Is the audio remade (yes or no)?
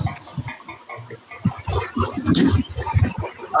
no